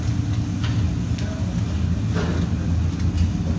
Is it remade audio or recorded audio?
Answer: recorded